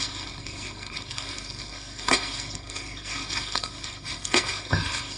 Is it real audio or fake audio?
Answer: fake